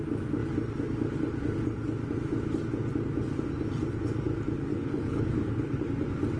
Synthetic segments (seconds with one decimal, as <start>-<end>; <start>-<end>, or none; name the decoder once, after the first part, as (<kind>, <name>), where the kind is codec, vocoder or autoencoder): 4.7-5.9 (codec, HILCodec)